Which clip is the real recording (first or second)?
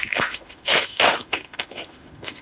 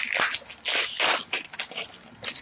second